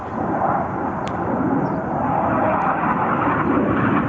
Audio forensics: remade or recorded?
recorded